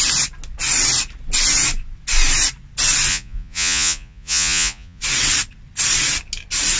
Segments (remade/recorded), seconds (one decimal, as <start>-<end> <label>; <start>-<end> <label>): 0.0-3.1 recorded; 3.1-5.0 remade; 5.0-6.8 recorded